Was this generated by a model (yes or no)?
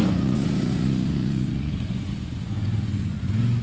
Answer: yes